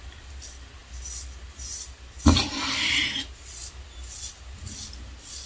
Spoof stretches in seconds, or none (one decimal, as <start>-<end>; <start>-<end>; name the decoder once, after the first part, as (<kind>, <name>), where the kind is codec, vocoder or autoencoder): none